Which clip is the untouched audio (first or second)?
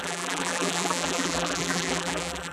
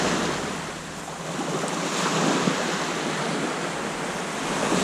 second